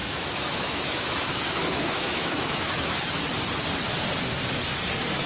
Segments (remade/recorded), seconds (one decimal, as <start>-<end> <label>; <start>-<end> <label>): 0.0-3.2 remade; 3.2-5.3 recorded